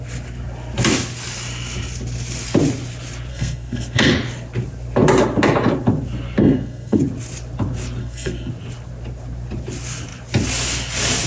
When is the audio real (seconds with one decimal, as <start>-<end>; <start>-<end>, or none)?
0.0-3.3; 4.1-6.4; 7.0-8.0; 8.5-11.3